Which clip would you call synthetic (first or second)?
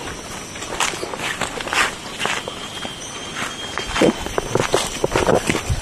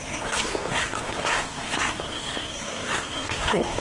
second